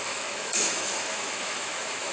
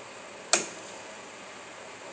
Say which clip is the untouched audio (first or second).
second